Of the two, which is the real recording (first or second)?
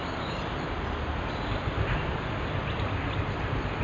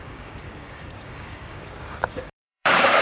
first